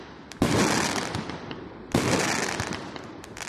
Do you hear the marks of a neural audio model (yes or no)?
no